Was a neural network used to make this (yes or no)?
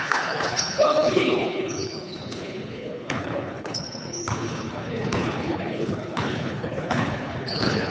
yes